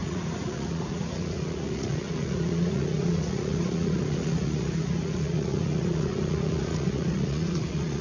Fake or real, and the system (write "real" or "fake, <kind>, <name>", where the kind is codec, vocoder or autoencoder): fake, vocoder, Vocos